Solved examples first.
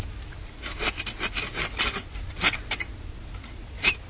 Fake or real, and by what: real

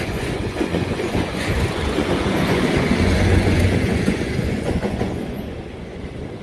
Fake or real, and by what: fake, vocoder, Vocos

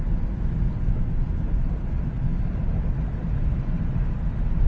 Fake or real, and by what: real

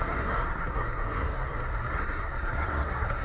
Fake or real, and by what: fake, codec, SNAC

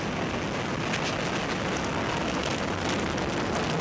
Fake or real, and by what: real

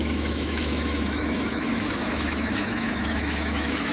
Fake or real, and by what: fake, autoencoder, DAC-VAE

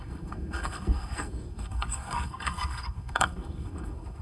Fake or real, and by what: fake, codec, SNAC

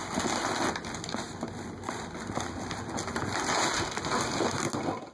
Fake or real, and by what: real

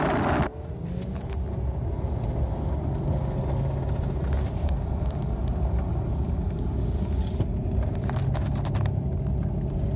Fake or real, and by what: real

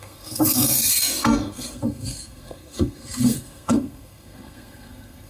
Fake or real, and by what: fake, codec, SNAC